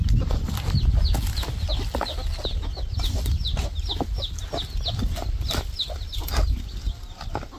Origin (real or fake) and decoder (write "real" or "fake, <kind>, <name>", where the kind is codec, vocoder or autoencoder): real